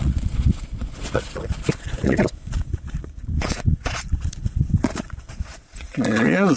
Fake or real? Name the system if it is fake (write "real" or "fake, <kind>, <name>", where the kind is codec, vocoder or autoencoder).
fake, vocoder, Vocos